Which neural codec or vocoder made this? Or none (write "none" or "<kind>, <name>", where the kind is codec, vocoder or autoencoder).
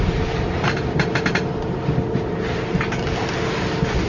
none